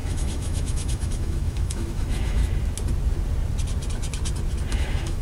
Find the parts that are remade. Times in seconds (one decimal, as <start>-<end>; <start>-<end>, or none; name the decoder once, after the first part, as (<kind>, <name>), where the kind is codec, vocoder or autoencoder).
0.0-2.4 (autoencoder, DAC-VAE); 4.7-5.2